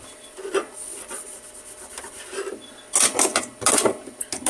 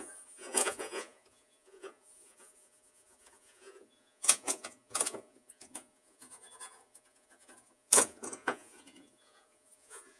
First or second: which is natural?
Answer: first